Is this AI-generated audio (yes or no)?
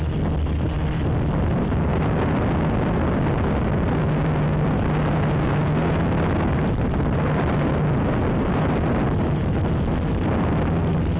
no